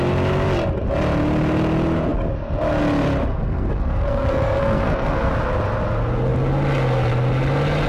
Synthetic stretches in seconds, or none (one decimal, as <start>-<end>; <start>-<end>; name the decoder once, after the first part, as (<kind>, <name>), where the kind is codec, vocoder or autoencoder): 3.3-5.3 (codec, SNAC)